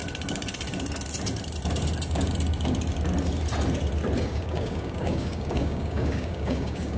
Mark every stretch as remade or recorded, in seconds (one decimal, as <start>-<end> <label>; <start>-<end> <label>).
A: 0.0-4.2 recorded; 4.2-7.0 remade